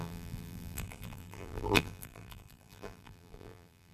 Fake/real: fake